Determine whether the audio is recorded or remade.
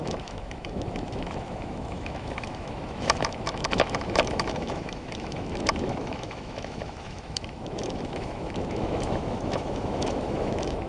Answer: remade